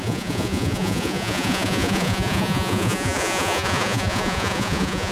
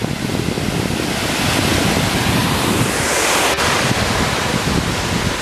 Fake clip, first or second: first